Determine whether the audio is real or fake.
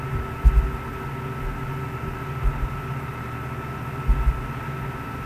real